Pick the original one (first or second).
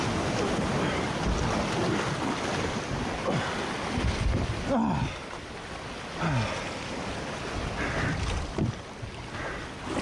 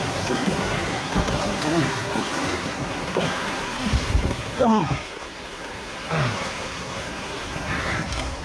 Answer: first